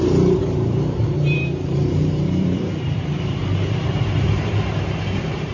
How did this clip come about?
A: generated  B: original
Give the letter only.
A